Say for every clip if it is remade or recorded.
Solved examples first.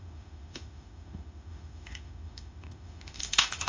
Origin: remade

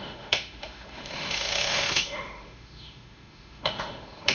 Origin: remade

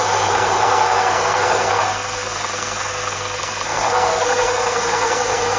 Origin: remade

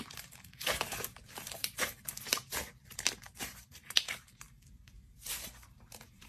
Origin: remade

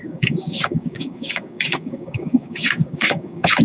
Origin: remade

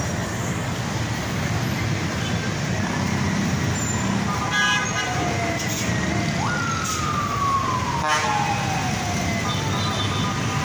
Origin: recorded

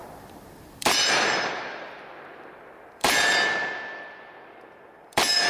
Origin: remade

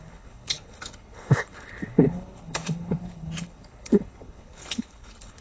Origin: remade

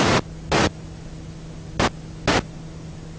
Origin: recorded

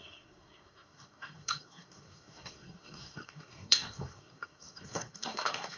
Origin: remade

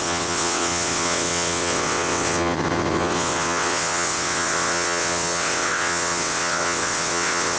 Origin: remade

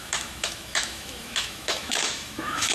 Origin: remade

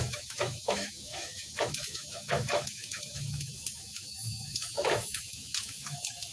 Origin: remade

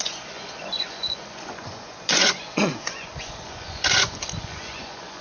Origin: remade